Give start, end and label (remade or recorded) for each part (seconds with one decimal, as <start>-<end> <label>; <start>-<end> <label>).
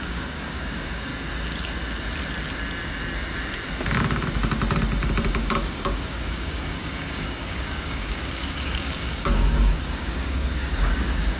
0.0-1.1 remade; 1.1-5.3 recorded; 5.3-11.4 remade